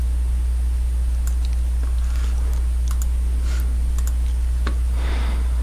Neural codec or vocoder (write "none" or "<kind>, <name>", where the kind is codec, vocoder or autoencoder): none